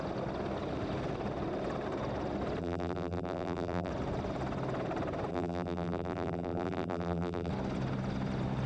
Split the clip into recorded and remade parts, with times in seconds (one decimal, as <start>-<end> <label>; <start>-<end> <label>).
0.0-2.6 recorded; 2.6-3.9 remade; 3.9-5.3 recorded; 5.3-7.5 remade; 7.5-8.7 recorded